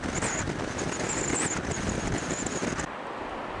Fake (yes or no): no